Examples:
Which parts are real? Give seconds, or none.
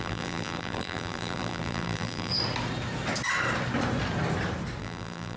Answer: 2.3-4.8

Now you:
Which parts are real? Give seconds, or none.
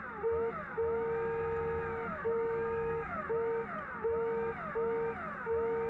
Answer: 0.0-2.1; 3.2-5.9